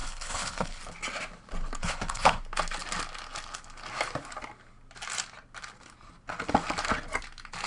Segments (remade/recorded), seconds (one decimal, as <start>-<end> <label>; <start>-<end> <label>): 0.0-0.8 remade; 0.8-1.8 recorded; 1.8-2.4 remade; 2.4-7.7 recorded

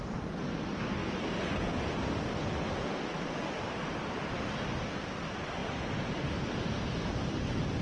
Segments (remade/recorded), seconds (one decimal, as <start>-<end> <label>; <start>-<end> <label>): 0.0-1.0 remade; 1.0-3.6 recorded; 3.6-7.8 remade